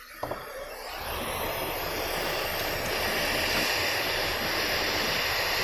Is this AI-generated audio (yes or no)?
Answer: no